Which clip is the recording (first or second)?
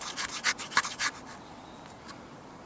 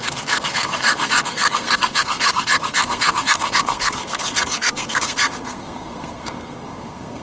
first